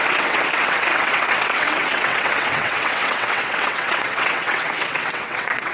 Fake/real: fake